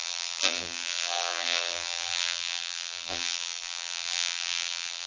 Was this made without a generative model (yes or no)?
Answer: no